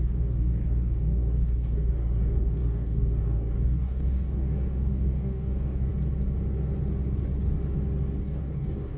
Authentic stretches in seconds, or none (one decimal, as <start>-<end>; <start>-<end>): 5.9-8.2